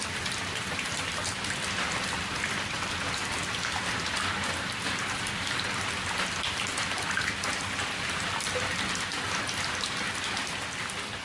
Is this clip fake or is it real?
fake